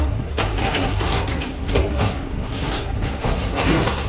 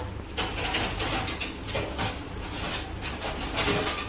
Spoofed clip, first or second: first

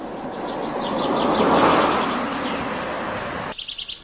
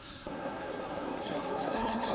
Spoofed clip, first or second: second